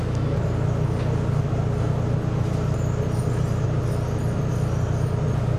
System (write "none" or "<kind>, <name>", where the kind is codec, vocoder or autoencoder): none